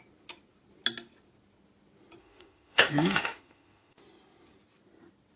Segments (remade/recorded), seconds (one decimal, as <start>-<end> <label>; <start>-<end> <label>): 0.0-2.2 recorded; 2.2-4.0 remade; 4.0-5.4 recorded